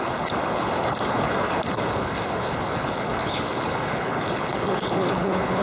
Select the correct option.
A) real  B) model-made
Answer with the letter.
B